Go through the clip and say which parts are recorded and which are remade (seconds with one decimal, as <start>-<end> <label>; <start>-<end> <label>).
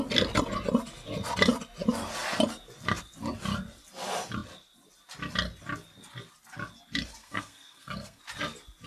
0.0-7.2 recorded; 7.2-8.2 remade; 8.2-8.9 recorded